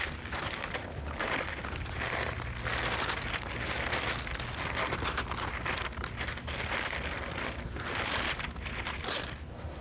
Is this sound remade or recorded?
recorded